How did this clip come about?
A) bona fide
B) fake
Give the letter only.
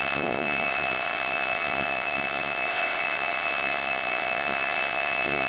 B